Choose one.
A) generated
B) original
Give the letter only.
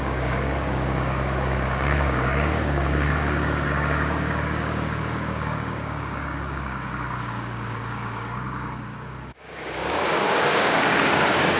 A